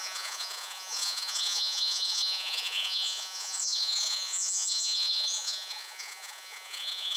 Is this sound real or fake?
fake